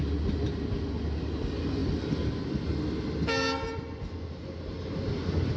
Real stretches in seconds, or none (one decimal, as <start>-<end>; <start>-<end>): 0.0-5.6